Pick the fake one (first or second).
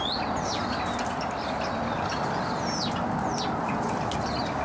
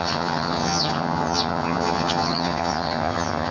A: second